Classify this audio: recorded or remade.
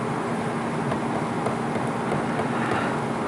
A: recorded